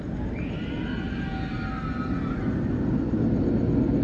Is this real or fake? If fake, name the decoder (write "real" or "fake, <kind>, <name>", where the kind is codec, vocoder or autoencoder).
real